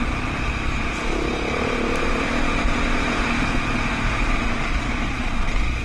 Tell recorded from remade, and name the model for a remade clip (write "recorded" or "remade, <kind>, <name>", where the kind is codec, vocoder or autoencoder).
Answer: recorded